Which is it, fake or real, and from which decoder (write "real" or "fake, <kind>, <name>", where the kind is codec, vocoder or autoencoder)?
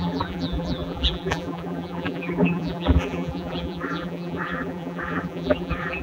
fake, vocoder, BigVGAN v2